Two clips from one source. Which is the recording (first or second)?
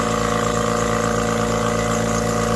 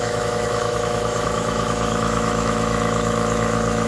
first